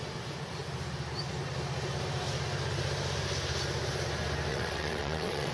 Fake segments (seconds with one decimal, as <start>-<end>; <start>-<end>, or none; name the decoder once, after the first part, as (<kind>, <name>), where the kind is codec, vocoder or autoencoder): 4.5-5.5 (vocoder, WaveNeXt)